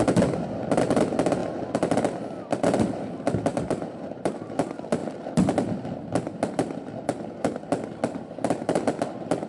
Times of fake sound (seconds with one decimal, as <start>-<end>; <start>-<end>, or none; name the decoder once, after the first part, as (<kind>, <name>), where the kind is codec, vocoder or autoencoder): 3.5-4.3 (vocoder, BigVGAN v2)